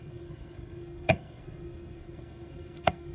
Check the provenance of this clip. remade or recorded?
remade